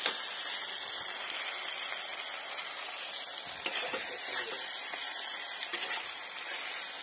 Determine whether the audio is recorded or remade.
recorded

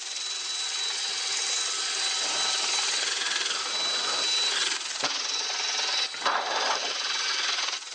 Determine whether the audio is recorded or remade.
recorded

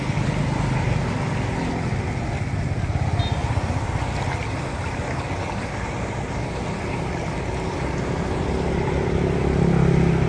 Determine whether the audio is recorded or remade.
recorded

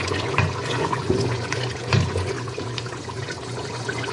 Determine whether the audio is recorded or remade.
remade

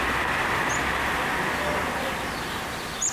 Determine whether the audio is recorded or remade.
recorded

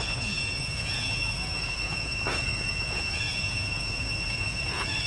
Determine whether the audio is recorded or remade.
remade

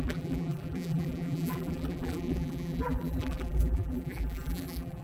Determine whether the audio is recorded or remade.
remade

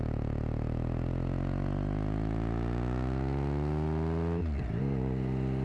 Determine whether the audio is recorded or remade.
recorded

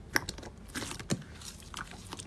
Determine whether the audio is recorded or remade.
recorded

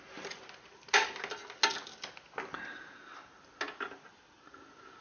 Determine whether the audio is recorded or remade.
recorded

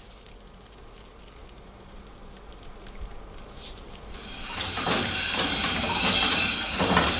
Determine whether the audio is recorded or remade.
remade